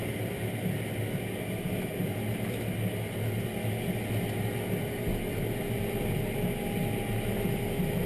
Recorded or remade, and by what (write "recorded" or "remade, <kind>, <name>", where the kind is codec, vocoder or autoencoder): recorded